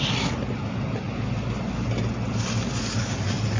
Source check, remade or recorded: recorded